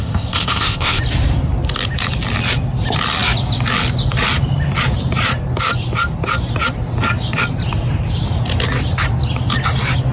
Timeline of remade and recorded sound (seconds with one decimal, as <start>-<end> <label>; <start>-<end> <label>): 0.0-1.0 remade; 1.0-10.1 recorded